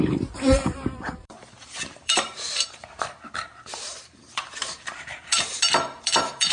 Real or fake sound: fake